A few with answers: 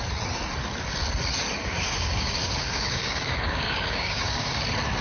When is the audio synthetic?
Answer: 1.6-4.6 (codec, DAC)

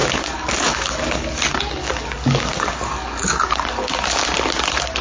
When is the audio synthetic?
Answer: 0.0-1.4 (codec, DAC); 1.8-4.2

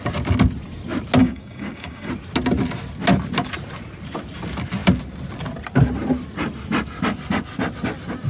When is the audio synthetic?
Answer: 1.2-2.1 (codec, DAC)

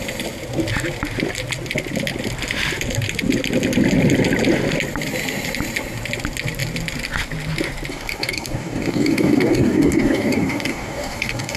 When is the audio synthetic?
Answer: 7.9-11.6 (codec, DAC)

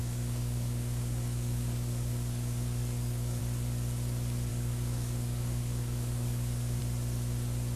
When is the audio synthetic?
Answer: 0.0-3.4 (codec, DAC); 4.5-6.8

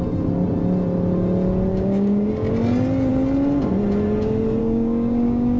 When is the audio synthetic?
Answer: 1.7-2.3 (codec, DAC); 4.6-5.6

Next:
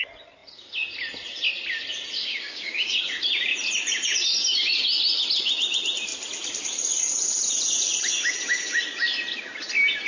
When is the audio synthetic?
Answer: 2.2-3.0 (codec, DAC)